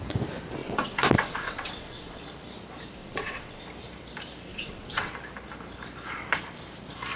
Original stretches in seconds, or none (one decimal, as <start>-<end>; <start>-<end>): 0.0-0.6; 2.2-3.0; 3.6-4.5; 5.1-7.2